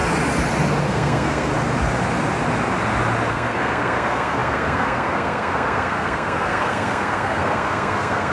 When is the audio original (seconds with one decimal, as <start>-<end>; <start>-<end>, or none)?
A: 0.0-0.8; 1.5-3.3